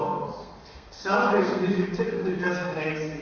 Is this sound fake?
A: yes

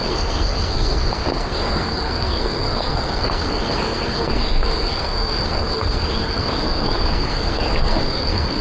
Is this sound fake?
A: yes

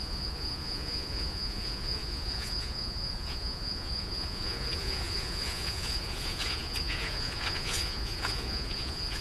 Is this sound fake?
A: yes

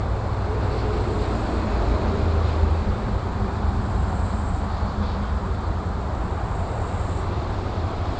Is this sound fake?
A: yes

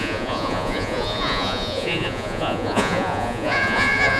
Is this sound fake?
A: yes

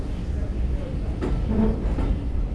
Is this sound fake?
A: no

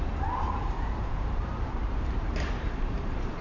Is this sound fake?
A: yes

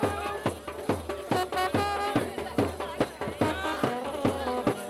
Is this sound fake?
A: no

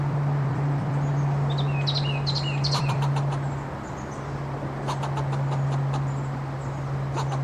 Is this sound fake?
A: yes